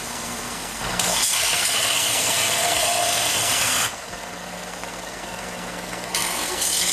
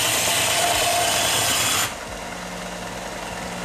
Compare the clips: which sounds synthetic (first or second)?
first